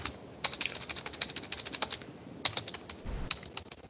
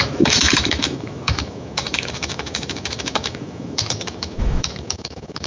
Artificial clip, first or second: second